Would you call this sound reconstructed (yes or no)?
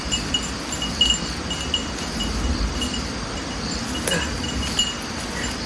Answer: no